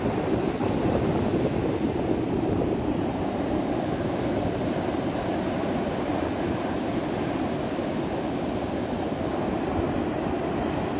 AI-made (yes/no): no